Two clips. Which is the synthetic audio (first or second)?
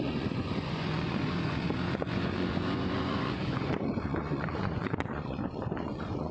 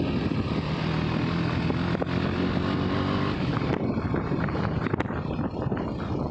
first